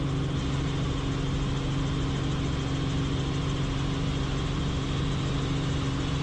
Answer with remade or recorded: recorded